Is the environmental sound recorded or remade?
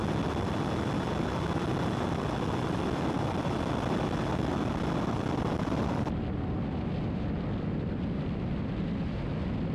recorded